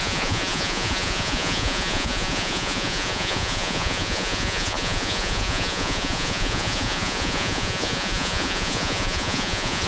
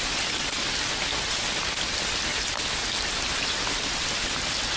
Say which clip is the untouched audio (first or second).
second